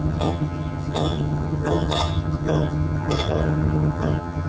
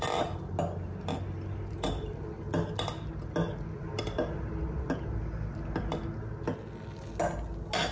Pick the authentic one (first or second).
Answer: second